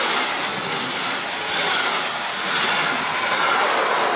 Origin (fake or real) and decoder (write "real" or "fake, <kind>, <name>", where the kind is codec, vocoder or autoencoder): real